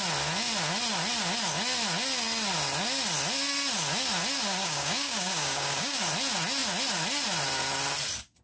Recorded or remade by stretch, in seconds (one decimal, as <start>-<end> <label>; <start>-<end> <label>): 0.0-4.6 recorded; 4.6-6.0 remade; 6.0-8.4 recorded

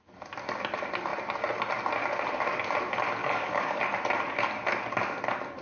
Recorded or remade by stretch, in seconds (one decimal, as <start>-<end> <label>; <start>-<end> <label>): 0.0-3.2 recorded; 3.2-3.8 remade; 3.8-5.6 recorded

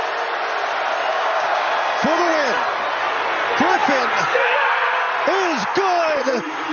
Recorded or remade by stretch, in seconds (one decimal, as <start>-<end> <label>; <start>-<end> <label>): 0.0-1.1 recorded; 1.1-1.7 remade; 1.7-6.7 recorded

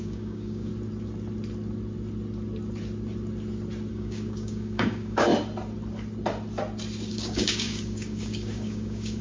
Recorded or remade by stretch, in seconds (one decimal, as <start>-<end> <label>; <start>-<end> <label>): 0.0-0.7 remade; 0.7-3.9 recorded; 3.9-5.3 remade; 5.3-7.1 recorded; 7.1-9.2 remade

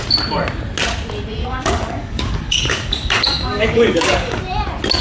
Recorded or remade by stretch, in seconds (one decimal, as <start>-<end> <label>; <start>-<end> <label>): 0.0-1.4 recorded; 1.4-4.4 remade; 4.4-5.0 recorded

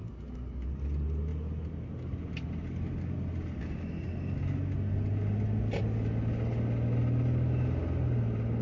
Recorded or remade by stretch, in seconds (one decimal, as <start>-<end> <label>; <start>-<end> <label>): 0.0-0.7 remade; 0.7-8.6 recorded

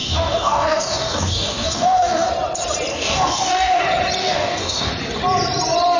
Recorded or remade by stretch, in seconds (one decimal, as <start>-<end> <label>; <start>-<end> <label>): 0.0-2.3 remade; 2.3-2.9 recorded; 2.9-3.8 remade; 3.8-4.2 recorded; 4.2-4.9 remade; 4.9-6.0 recorded